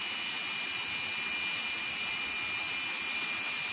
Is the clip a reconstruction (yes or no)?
no